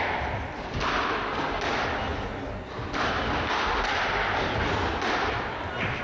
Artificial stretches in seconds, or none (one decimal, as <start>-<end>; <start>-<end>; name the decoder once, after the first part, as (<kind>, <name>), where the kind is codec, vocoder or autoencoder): none